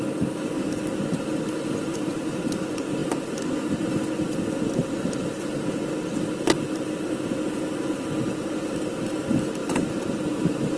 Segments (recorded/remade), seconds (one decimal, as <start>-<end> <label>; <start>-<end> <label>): 0.0-1.9 recorded; 1.9-2.4 remade; 2.4-3.0 recorded; 3.0-3.8 remade; 3.8-4.8 recorded; 4.8-5.7 remade; 5.7-9.6 recorded; 9.6-10.8 remade